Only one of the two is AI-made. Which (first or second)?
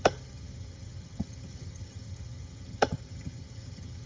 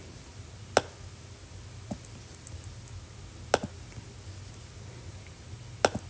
first